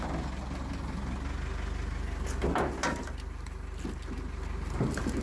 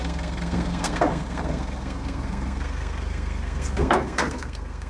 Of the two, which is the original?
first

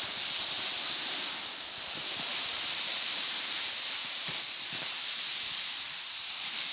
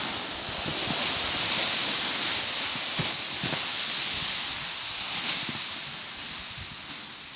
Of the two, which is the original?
second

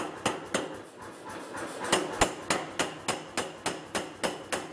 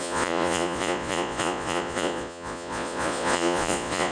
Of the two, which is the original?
first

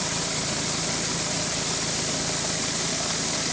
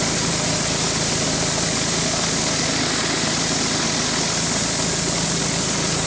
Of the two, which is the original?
second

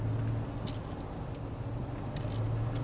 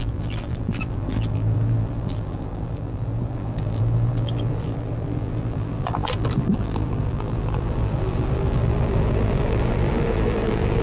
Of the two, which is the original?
first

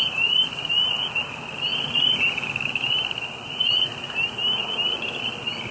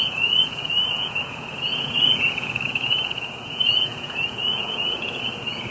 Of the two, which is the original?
first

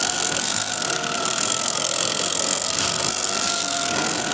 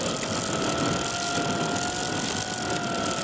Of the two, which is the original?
second